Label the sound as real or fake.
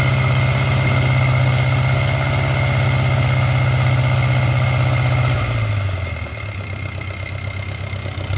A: real